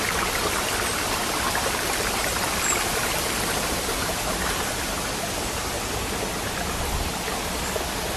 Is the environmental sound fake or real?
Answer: real